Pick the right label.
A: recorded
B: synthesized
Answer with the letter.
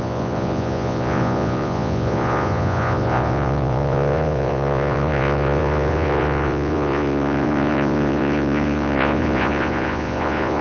B